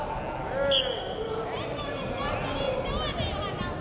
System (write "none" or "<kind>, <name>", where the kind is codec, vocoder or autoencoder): none